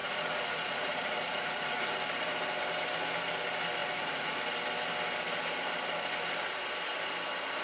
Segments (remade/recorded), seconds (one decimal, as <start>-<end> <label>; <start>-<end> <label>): 0.0-1.9 remade; 1.9-3.8 recorded; 3.8-4.4 remade; 4.4-7.6 recorded